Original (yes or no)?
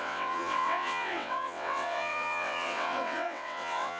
no